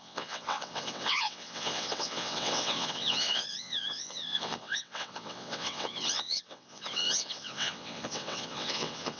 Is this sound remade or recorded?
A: remade